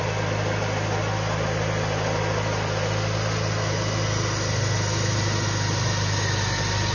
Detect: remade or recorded recorded